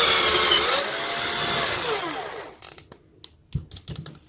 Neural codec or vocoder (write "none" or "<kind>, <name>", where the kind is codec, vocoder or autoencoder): none